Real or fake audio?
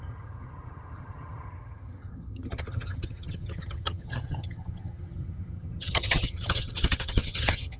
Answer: fake